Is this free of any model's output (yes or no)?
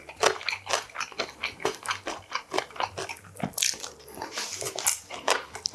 yes